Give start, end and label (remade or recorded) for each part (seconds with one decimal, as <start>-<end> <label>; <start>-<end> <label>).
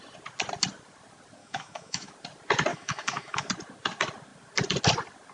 0.0-1.4 recorded; 1.4-2.1 remade; 2.1-2.7 recorded; 2.7-3.5 remade; 3.5-5.3 recorded